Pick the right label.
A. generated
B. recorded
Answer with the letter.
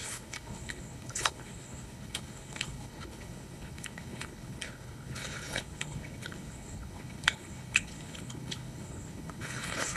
A